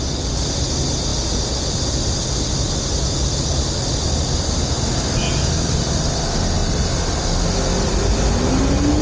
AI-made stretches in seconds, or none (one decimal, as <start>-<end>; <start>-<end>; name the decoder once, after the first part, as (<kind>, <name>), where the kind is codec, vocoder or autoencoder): none